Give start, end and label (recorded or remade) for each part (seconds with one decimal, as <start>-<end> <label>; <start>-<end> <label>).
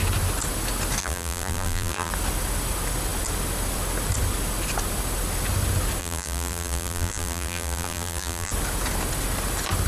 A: 0.0-1.0 recorded; 1.0-2.1 remade; 2.1-6.0 recorded; 6.0-8.5 remade; 8.5-9.9 recorded